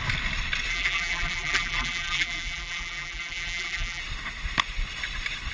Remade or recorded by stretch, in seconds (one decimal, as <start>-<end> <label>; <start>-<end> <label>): 0.0-0.7 recorded; 0.7-4.0 remade; 4.0-5.5 recorded